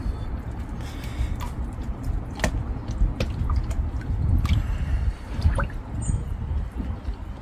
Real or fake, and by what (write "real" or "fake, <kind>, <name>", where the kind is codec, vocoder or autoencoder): real